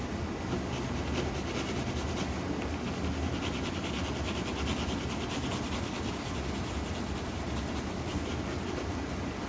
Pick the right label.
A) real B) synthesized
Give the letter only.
A